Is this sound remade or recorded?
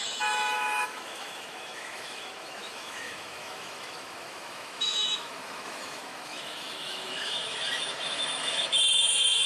remade